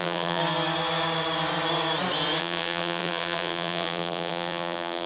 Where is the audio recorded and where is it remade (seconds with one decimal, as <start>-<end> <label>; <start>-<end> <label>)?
0.0-0.4 remade; 0.4-2.4 recorded; 2.4-5.1 remade